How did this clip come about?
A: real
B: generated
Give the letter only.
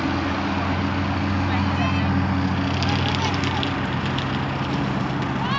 A